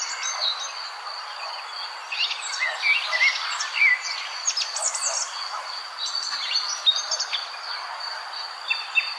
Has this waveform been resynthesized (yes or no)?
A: no